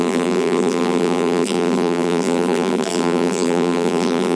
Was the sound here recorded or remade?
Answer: remade